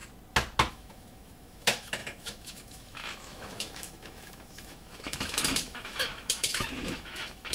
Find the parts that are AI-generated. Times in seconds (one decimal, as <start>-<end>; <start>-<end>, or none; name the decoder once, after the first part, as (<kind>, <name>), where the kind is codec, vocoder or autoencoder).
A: 0.7-7.5 (autoencoder, DAC-VAE)